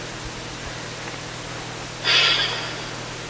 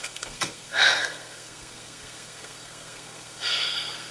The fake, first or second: second